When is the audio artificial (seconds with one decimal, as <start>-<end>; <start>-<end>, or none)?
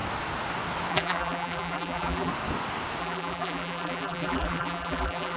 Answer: 0.9-2.3; 3.0-5.4